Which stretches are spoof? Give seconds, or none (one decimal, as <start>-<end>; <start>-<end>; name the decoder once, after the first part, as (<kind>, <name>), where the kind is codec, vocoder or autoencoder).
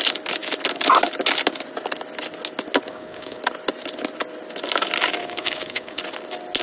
2.9-3.4 (codec, DAC); 5.2-6.0